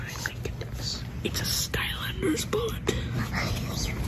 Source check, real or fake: real